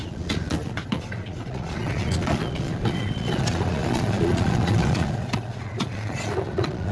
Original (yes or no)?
no